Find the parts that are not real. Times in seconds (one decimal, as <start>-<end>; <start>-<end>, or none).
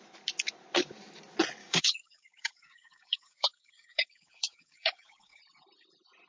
1.6-5.4